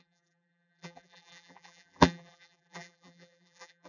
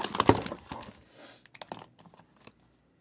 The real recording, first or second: second